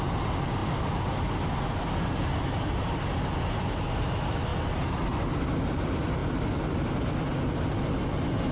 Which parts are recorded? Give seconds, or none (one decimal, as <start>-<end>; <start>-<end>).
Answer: 0.0-4.5; 5.2-6.2; 7.2-8.5